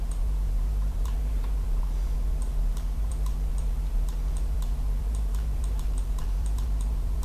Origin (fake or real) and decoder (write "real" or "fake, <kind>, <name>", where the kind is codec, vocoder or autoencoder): fake, vocoder, BigVGAN v2